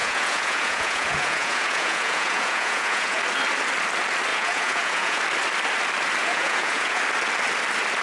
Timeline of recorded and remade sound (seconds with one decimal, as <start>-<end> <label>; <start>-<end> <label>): 0.0-3.2 remade; 3.2-4.3 recorded; 4.3-5.2 remade; 5.2-6.2 recorded; 6.2-7.0 remade; 7.0-8.0 recorded